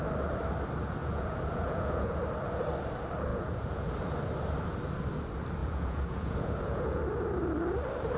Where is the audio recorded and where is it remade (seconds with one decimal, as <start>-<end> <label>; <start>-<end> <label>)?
0.0-1.0 recorded; 1.0-2.2 remade; 2.2-3.3 recorded; 3.3-3.9 remade; 3.9-5.6 recorded; 5.6-7.0 remade; 7.0-8.2 recorded